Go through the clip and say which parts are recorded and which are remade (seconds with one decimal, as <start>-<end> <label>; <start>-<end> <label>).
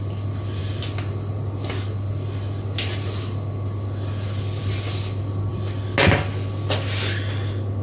0.0-7.8 recorded